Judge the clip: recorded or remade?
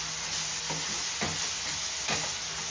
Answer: recorded